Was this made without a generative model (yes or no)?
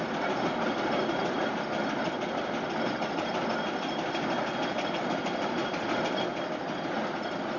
yes